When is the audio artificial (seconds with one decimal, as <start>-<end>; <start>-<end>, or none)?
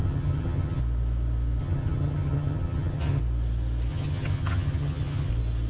0.0-0.8; 1.6-3.2; 3.9-5.3